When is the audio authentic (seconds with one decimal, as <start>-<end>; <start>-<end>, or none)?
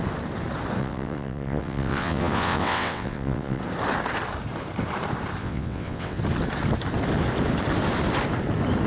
0.0-0.8; 3.6-5.4; 6.2-8.9